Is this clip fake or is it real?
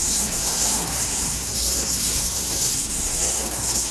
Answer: fake